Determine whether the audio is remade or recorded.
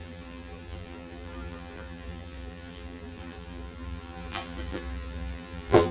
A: remade